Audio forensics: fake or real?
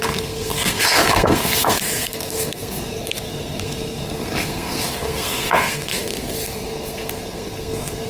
fake